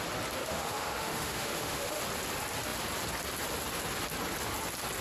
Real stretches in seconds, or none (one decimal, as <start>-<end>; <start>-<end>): 0.0-0.4; 2.0-5.0